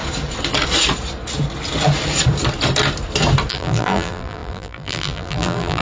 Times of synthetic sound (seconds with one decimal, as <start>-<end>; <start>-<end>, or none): 3.5-5.8